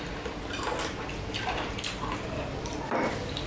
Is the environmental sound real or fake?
real